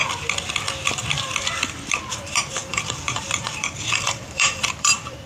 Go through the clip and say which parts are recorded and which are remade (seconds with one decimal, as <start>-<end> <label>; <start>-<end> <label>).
0.0-2.1 recorded; 2.1-5.3 remade

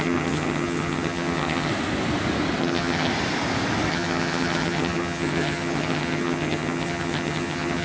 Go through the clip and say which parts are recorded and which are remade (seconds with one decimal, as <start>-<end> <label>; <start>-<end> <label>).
0.0-1.7 remade; 1.7-2.6 recorded; 2.6-3.1 remade; 3.1-3.9 recorded; 3.9-7.8 remade

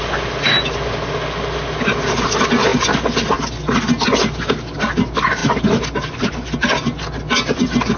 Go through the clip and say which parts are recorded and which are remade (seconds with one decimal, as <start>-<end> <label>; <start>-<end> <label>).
0.0-8.0 recorded

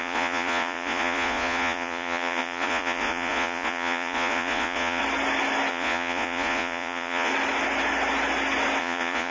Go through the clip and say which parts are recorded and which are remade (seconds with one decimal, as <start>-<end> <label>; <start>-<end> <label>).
0.0-5.0 remade; 5.0-5.7 recorded; 5.7-7.3 remade; 7.3-8.8 recorded; 8.8-9.3 remade

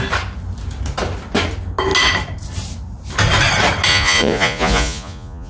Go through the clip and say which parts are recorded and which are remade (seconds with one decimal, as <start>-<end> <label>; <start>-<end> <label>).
0.0-3.9 recorded; 3.9-5.5 remade

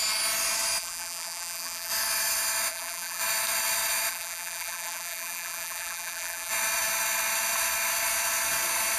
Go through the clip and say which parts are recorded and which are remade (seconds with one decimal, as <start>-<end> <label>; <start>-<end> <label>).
0.0-0.8 recorded; 0.8-1.9 remade; 1.9-2.7 recorded; 2.7-3.2 remade; 3.2-4.1 recorded; 4.1-6.5 remade; 6.5-9.0 recorded

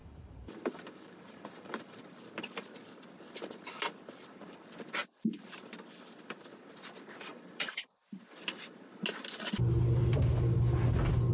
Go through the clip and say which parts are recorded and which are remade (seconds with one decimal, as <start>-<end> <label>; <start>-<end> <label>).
0.0-2.0 remade; 2.0-7.3 recorded; 7.3-7.9 remade; 7.9-11.3 recorded

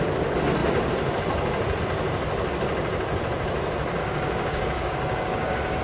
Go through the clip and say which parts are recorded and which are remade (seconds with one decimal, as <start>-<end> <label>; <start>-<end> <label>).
0.0-4.0 recorded; 4.0-5.8 remade